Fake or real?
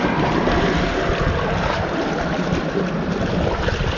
real